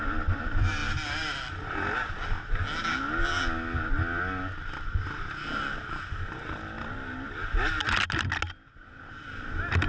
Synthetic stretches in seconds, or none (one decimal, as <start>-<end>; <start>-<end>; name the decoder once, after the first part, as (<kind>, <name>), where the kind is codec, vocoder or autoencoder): none